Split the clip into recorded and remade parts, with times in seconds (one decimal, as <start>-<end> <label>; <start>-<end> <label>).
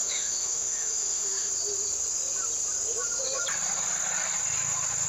0.0-1.5 remade; 1.5-5.1 recorded